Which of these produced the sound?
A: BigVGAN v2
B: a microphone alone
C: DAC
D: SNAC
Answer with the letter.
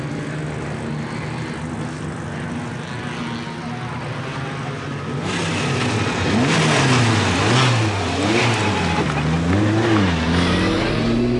B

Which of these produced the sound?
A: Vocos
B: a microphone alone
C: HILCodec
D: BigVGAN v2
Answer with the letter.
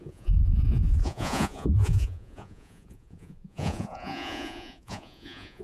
A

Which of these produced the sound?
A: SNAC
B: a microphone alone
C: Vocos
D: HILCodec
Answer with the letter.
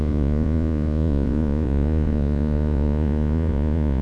C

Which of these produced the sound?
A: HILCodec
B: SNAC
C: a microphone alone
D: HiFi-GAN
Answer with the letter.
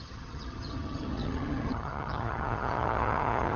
D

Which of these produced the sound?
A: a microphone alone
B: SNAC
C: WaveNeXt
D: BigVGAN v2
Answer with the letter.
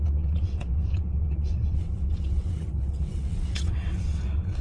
C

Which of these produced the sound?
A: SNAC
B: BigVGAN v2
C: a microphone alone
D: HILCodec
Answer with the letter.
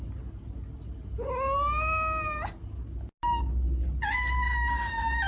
C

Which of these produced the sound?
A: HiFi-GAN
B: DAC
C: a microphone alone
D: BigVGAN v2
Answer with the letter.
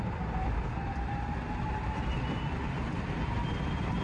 D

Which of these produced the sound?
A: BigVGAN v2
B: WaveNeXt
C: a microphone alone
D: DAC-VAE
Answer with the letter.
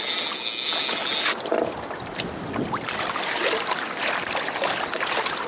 C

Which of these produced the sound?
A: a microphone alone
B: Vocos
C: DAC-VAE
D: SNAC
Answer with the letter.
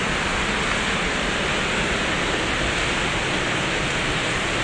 A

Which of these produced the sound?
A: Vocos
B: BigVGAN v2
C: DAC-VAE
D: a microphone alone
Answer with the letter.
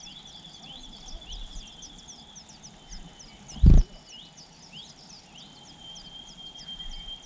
D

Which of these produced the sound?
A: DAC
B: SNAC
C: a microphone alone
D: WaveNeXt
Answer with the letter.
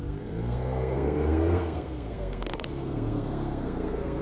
B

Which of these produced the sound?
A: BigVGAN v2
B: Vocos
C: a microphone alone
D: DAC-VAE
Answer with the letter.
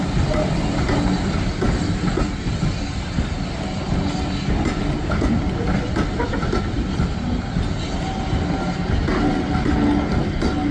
C